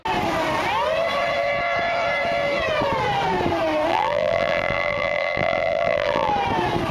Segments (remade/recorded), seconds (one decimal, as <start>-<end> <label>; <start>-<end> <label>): 0.0-3.9 recorded; 3.9-6.3 remade; 6.3-6.9 recorded